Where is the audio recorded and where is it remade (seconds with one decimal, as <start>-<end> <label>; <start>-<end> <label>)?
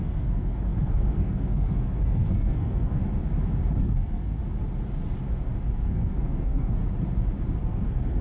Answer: 0.0-3.0 remade; 3.0-3.8 recorded; 3.8-4.4 remade; 4.4-5.6 recorded; 5.6-6.8 remade; 6.8-7.6 recorded; 7.6-8.2 remade